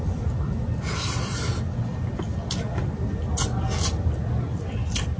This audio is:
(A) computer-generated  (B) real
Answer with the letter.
B